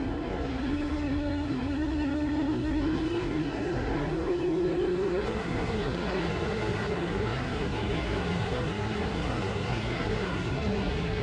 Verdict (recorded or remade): remade